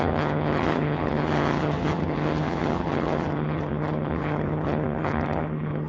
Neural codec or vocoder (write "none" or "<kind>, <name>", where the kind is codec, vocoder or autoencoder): vocoder, HiFi-GAN